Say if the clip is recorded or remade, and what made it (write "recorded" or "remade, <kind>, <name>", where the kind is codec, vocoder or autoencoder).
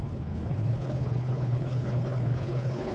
remade, codec, HILCodec